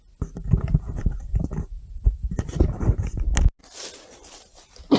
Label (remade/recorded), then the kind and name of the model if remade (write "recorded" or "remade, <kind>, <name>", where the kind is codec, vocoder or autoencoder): recorded